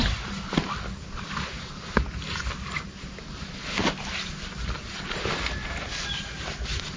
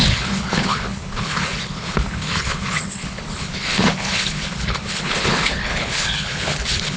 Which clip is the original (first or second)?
first